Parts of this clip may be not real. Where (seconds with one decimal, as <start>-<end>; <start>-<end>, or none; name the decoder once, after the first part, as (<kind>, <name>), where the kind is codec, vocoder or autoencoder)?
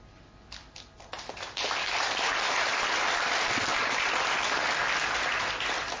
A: none